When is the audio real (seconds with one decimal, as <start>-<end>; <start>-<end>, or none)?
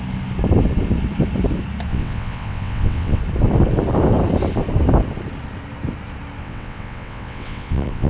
0.0-1.9; 3.2-6.4